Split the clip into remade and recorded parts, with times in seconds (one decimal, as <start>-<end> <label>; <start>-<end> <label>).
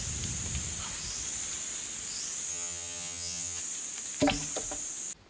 0.0-2.5 recorded; 2.5-3.6 remade; 3.6-5.3 recorded